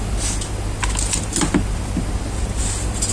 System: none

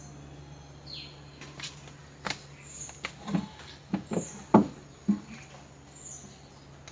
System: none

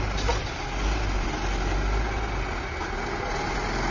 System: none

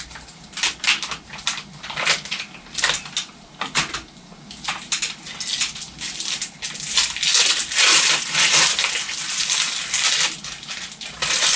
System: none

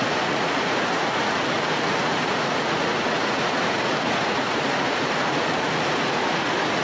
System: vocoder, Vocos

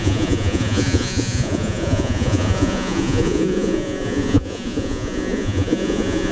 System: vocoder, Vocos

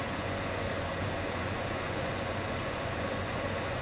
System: vocoder, Vocos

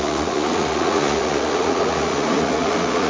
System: vocoder, Vocos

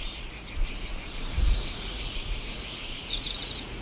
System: vocoder, Vocos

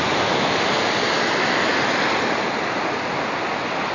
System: none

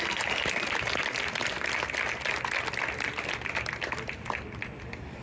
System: none